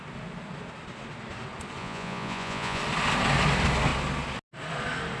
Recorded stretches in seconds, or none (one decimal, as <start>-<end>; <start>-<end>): 0.0-1.8; 2.8-5.2